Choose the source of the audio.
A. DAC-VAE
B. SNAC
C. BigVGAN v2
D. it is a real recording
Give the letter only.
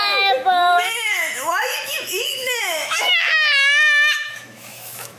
A